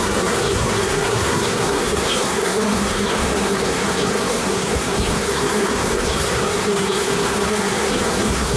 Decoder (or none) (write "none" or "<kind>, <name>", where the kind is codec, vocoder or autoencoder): codec, SNAC